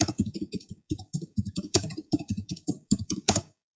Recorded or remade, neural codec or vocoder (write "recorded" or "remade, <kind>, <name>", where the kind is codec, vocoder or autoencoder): remade, codec, DAC